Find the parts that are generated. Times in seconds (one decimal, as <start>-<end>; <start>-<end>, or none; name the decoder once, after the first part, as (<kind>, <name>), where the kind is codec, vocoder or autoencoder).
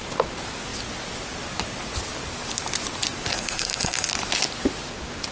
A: 3.3-4.1 (codec, SNAC)